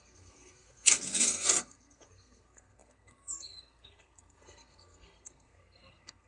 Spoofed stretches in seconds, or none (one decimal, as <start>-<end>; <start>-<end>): 0.0-6.3